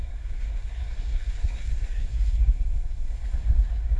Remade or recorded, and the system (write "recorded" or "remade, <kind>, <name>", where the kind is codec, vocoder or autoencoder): remade, codec, SNAC